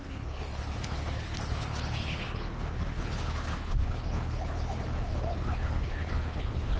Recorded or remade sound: remade